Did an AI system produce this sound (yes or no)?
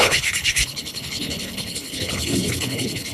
yes